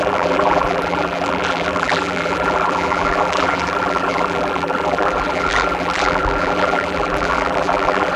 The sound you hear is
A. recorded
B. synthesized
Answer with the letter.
B